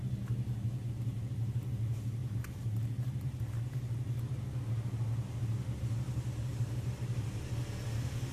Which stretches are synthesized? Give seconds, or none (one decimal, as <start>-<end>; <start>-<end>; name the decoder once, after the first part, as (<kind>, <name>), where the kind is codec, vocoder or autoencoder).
2.2-4.4 (vocoder, BigVGAN v2); 6.5-7.4